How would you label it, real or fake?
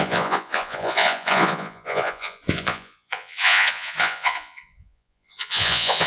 fake